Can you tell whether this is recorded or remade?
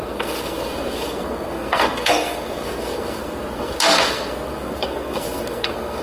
remade